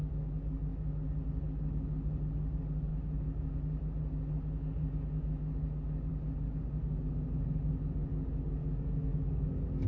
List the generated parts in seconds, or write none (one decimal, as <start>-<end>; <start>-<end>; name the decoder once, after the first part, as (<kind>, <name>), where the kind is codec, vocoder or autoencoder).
2.9-3.5 (autoencoder, DAC-VAE); 8.6-9.4